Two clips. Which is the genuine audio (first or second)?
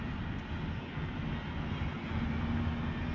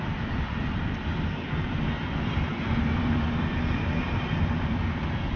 first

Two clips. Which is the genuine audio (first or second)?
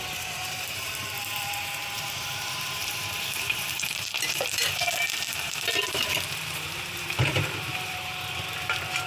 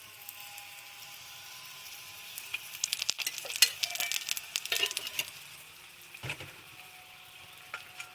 second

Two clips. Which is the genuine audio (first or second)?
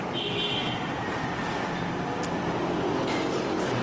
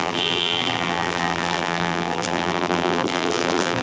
first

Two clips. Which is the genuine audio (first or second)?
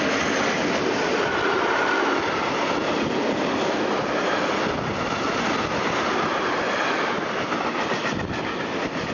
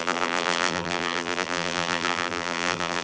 first